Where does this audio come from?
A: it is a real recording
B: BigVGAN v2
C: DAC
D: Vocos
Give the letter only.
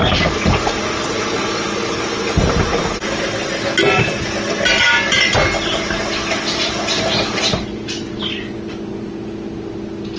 A